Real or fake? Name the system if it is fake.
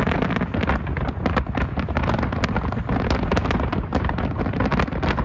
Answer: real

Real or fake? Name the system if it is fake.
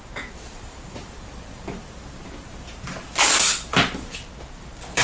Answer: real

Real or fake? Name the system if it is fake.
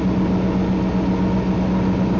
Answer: real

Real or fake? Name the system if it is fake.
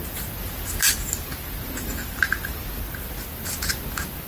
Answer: real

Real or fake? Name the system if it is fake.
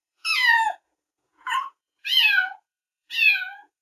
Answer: fake, vocoder, Vocos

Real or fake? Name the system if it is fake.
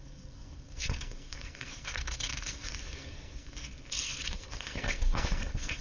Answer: fake, codec, SNAC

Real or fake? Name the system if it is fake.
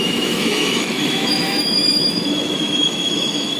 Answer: fake, autoencoder, DAC-VAE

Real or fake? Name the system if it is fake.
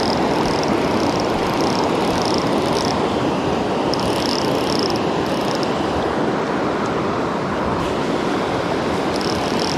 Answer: real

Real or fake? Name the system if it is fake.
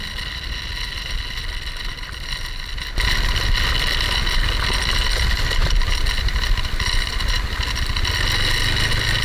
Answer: real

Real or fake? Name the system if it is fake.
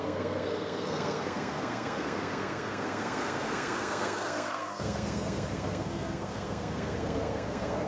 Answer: fake, codec, SNAC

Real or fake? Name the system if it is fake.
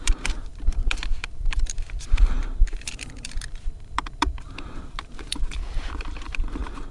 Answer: fake, vocoder, BigVGAN v2